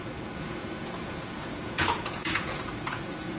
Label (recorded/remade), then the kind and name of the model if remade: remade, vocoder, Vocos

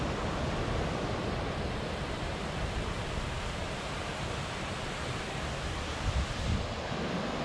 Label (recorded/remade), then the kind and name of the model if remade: recorded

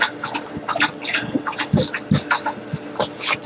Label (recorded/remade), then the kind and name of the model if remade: recorded